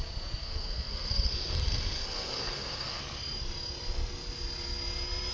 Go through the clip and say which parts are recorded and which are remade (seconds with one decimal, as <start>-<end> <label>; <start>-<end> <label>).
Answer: 0.0-0.4 recorded; 0.4-3.0 remade; 3.0-5.3 recorded